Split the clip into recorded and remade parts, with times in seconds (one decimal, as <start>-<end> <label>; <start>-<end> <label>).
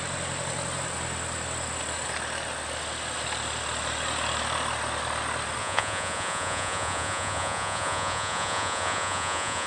0.0-5.6 recorded; 5.6-9.7 remade